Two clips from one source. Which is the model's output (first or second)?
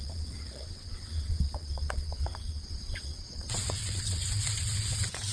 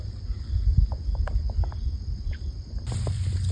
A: first